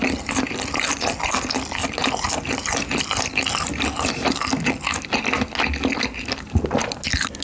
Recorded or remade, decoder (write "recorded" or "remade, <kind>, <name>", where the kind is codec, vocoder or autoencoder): recorded